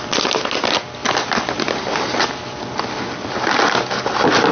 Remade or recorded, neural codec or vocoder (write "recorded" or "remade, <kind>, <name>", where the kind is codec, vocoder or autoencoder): recorded